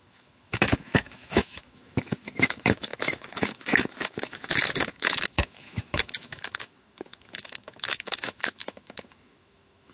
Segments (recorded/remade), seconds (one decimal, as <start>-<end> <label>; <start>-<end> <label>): 0.0-9.9 remade